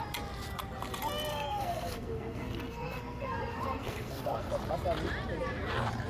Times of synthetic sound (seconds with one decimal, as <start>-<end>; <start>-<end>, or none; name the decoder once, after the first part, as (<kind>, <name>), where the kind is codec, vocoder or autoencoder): 1.3-4.5 (codec, SNAC)